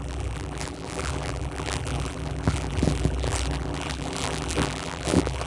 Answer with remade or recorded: remade